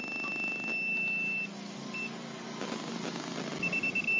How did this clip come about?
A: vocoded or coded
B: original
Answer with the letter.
B